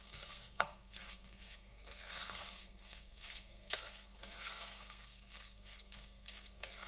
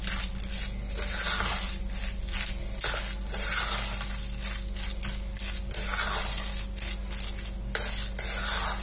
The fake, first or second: first